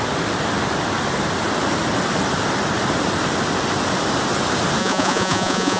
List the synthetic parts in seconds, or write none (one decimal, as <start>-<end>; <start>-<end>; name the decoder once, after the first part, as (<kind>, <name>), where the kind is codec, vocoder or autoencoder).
4.8-5.8 (vocoder, Vocos)